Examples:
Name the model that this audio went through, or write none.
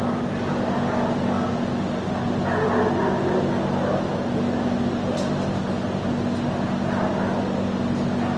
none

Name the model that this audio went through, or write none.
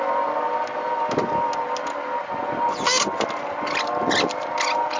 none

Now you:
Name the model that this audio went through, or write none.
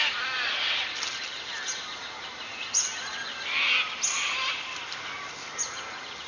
none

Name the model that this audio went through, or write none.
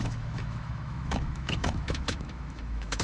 autoencoder, DAC-VAE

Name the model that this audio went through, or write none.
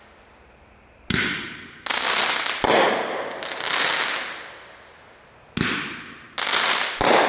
none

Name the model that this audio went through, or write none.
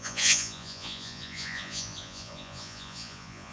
vocoder, Vocos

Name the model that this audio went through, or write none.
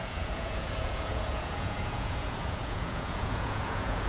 vocoder, Vocos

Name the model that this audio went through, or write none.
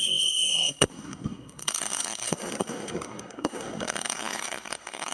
codec, SNAC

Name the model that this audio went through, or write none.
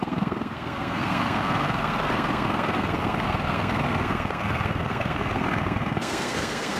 codec, SNAC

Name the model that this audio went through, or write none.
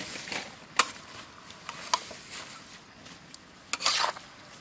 none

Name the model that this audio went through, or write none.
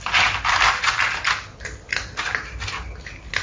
none